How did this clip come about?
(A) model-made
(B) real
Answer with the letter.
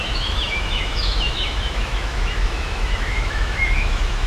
A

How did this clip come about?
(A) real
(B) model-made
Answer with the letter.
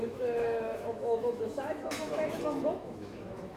B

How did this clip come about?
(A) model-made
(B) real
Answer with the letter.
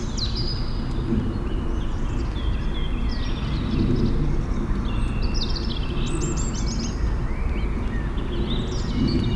B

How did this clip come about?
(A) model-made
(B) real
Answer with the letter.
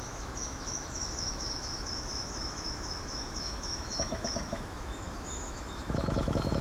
A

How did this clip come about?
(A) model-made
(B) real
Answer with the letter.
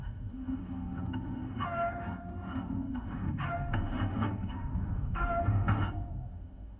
A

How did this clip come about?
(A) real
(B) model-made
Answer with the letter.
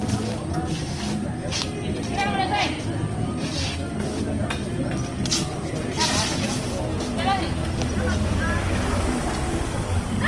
A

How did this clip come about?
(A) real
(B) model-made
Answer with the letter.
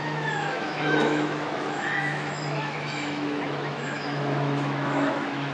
B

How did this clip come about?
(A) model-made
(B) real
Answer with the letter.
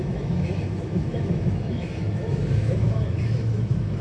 A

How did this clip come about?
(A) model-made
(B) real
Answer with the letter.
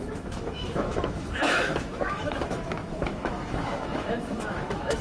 A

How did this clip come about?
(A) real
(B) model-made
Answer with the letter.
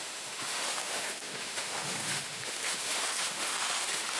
B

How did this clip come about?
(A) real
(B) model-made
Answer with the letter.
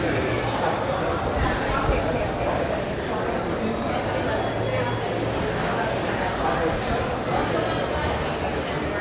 A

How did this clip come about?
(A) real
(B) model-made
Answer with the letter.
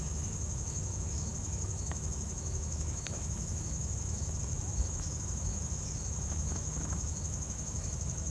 B